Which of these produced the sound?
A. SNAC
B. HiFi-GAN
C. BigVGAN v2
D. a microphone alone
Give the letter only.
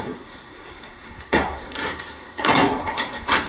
A